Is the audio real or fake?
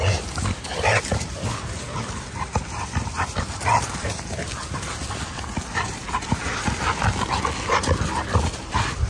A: real